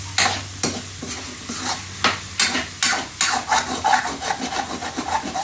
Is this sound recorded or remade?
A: recorded